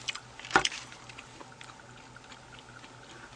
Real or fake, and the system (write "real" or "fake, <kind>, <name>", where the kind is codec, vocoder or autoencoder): real